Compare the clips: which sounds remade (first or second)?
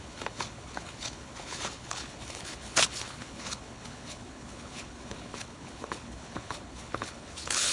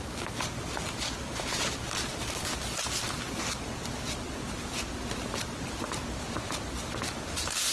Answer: first